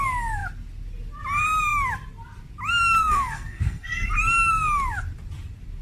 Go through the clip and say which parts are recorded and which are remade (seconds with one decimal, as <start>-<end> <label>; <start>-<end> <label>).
0.0-3.0 recorded; 3.0-4.1 remade; 4.1-5.8 recorded